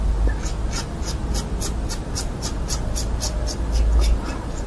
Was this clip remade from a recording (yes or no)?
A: no